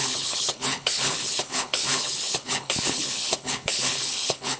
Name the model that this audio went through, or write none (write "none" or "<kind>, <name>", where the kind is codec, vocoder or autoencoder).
codec, HILCodec